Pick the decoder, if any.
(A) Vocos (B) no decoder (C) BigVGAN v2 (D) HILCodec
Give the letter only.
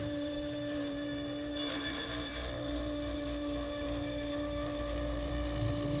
C